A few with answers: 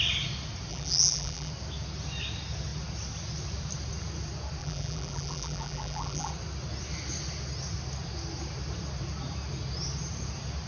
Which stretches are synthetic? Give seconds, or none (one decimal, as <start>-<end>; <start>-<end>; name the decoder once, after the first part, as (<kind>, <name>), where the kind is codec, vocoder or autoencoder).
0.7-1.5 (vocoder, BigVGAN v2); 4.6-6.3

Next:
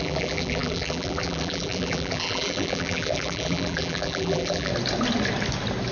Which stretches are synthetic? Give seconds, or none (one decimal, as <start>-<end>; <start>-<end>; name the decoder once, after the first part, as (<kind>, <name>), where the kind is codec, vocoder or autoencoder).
0.0-4.7 (vocoder, BigVGAN v2)

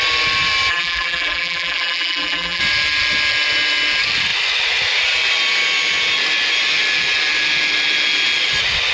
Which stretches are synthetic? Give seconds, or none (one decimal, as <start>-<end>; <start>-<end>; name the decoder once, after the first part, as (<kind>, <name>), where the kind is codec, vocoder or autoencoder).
0.7-2.6 (vocoder, BigVGAN v2)

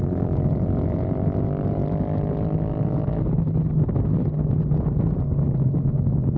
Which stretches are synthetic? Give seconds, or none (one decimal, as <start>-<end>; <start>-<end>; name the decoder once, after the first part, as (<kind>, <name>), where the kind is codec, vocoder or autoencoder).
0.0-1.8 (vocoder, BigVGAN v2); 5.6-6.4

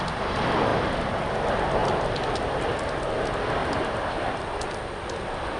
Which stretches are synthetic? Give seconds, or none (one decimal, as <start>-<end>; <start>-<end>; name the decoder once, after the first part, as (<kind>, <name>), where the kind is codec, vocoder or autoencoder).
1.8-2.4 (vocoder, BigVGAN v2); 3.6-5.6

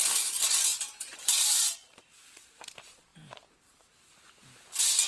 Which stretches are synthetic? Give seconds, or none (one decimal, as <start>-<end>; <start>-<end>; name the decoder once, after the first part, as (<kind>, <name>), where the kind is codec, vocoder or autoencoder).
0.7-2.6 (vocoder, BigVGAN v2); 3.1-4.3

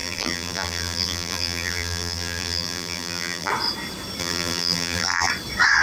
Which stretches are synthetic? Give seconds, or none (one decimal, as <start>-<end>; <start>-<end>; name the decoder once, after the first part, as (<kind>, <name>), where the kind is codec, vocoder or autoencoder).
0.0-3.5 (vocoder, BigVGAN v2); 4.2-5.3

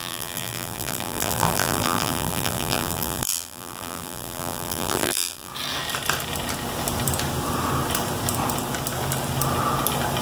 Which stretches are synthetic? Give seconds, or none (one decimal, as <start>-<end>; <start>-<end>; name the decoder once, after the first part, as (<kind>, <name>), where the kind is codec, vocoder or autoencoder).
0.0-5.5 (vocoder, BigVGAN v2)